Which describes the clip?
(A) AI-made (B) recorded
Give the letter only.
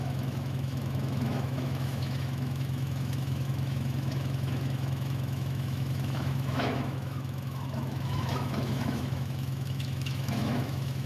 A